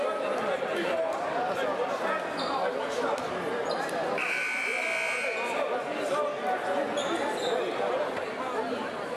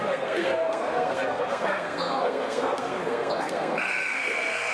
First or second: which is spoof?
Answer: second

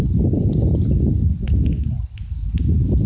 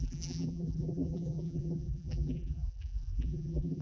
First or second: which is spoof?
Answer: second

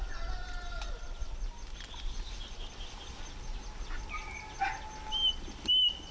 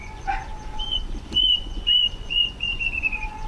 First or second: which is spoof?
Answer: second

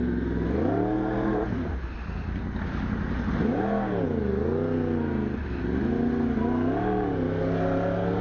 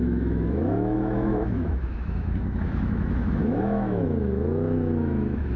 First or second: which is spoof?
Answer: second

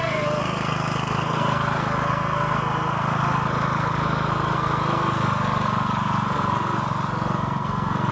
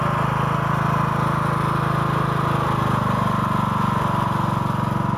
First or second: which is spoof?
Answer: first